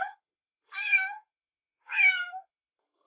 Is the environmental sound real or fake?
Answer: fake